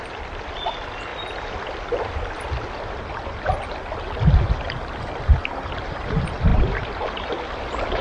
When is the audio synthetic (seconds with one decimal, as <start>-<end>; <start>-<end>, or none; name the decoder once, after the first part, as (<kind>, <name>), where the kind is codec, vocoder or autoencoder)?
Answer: none